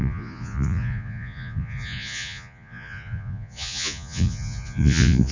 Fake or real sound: fake